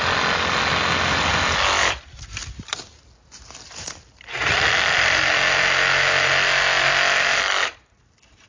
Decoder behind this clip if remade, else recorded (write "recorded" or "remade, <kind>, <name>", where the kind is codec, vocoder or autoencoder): recorded